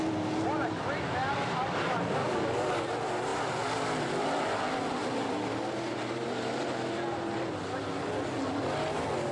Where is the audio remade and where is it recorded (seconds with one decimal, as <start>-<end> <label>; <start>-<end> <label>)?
0.0-2.2 recorded; 2.2-2.8 remade; 2.8-9.3 recorded